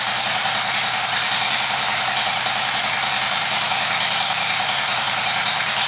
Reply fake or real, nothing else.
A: fake